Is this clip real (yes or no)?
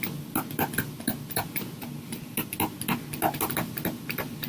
yes